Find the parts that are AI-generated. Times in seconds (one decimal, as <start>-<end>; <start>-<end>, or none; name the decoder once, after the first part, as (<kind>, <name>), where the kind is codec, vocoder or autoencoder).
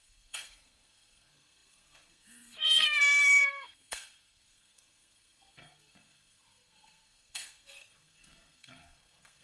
0.0-9.4 (codec, SNAC)